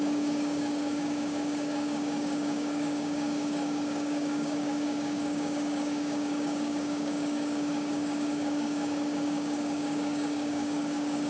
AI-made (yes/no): yes